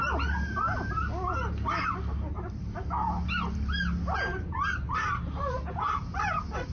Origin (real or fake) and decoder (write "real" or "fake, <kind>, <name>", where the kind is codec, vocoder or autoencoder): real